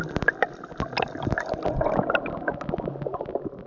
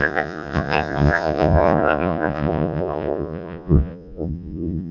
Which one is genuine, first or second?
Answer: first